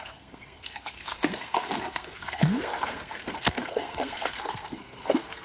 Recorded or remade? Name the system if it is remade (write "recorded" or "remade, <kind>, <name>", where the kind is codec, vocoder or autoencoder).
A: remade, codec, SNAC